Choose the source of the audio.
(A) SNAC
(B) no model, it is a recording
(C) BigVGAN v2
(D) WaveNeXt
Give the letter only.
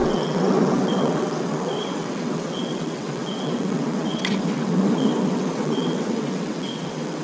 D